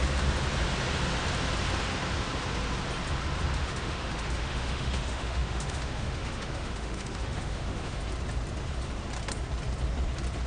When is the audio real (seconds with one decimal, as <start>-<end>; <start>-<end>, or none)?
0.0-3.5; 8.0-10.5